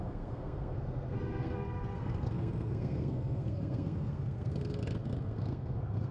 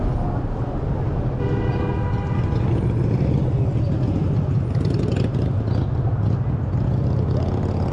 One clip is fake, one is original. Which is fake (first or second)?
first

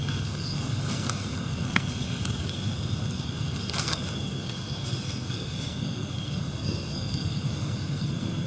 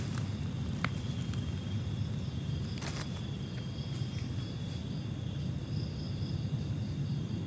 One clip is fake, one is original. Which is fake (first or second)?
first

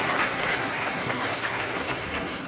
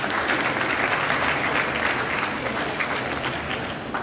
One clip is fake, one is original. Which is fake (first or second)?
first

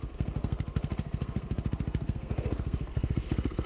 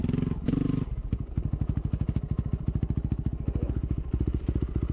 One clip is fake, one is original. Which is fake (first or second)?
first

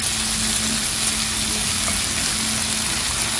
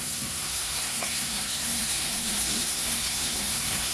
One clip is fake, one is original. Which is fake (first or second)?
second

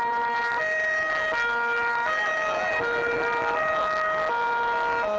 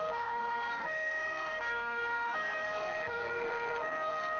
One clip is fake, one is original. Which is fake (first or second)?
second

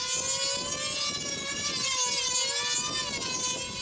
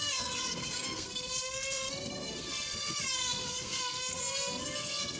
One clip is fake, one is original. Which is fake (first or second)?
second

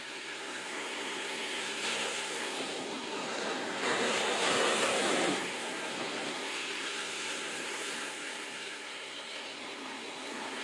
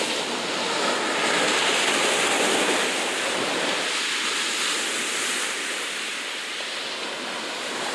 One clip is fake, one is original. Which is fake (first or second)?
first